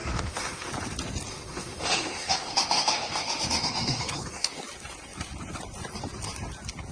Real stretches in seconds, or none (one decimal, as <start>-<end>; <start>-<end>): 0.7-1.3; 4.6-6.9